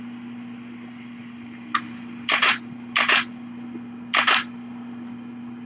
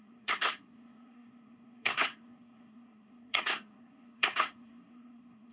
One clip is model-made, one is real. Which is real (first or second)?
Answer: first